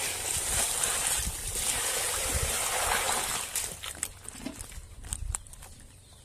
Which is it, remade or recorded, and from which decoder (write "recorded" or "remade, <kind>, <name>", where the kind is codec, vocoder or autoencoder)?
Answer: recorded